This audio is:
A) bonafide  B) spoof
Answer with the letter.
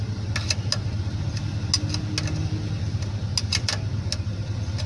A